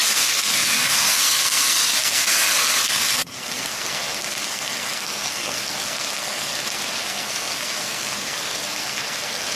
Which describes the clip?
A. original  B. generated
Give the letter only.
B